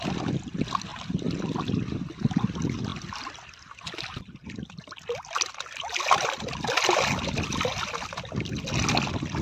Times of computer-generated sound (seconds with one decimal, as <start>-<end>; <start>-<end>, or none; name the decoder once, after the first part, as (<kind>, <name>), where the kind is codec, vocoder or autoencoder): none